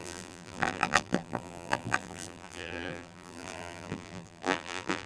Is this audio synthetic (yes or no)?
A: yes